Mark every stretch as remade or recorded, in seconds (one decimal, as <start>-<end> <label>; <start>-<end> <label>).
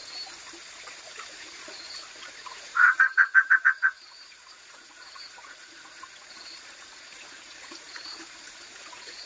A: 0.0-0.9 recorded; 0.9-9.3 remade